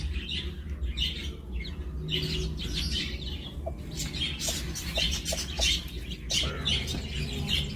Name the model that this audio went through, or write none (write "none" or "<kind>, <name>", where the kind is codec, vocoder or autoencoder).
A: none